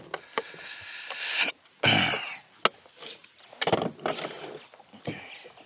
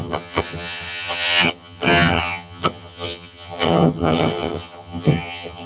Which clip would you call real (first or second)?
first